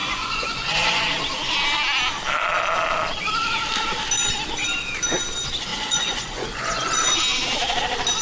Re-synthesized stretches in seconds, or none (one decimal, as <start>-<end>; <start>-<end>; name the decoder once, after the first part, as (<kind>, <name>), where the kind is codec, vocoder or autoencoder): 0.0-1.0 (vocoder, Vocos); 5.7-6.9